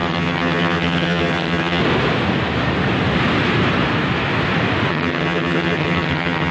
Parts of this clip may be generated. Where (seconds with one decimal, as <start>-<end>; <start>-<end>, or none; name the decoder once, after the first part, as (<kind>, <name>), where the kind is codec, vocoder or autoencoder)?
0.0-1.8 (vocoder, HiFi-GAN); 4.9-6.5